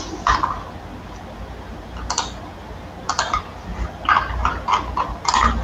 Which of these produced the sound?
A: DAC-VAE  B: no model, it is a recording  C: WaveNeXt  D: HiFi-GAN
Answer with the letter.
B